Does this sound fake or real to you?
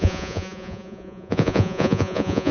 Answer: fake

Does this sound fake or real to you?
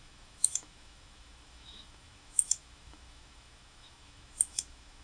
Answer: fake